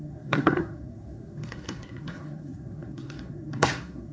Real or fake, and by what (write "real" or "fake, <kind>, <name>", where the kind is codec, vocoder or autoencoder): fake, codec, SNAC